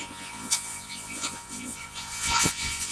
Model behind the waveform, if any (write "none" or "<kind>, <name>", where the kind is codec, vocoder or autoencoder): vocoder, Vocos